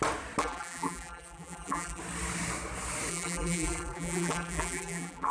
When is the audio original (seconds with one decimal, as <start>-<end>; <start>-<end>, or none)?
0.0-0.4; 2.0-3.1